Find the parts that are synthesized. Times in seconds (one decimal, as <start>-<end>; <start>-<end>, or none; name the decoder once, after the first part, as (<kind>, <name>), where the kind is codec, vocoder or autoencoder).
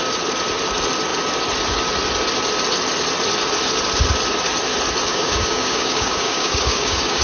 5.1-7.2 (codec, DAC)